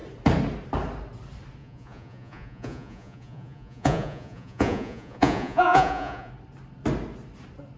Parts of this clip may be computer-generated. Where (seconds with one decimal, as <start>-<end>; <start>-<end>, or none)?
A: 1.6-6.3